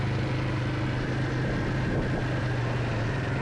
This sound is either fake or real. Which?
real